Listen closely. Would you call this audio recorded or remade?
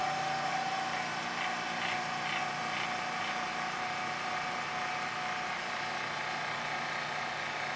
recorded